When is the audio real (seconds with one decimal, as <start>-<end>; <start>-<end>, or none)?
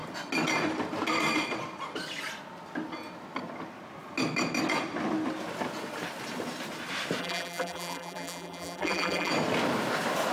0.0-7.2; 9.3-10.3